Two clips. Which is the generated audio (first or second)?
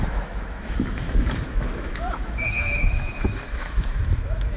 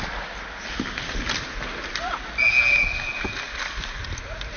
first